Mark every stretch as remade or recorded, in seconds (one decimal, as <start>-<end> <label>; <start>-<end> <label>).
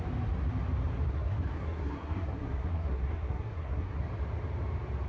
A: 0.0-1.1 recorded; 1.1-4.0 remade; 4.0-5.1 recorded